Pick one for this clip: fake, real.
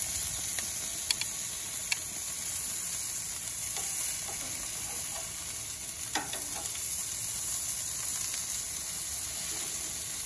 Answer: real